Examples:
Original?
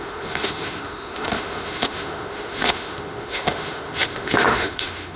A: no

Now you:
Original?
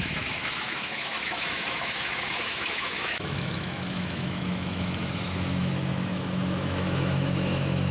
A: no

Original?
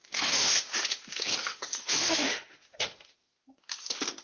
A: no